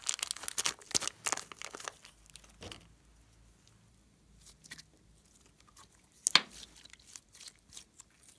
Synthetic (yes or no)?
no